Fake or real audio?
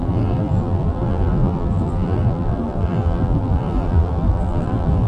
fake